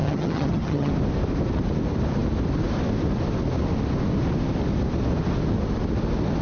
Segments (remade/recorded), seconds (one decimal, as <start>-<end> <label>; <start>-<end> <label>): 0.0-0.9 remade; 0.9-6.4 recorded